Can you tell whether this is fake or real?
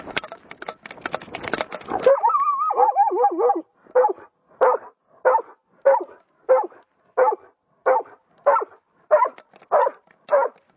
real